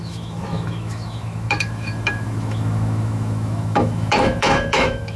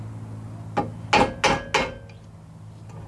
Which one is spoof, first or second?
first